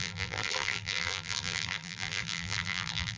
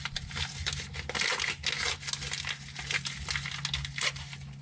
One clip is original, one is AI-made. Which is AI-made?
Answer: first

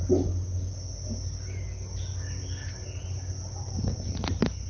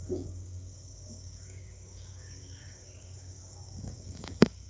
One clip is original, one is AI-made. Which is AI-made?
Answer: second